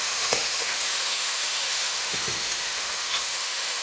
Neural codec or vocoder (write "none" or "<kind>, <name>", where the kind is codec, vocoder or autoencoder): autoencoder, DAC-VAE